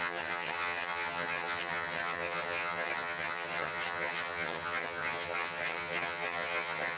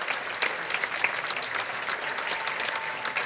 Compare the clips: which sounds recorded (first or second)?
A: second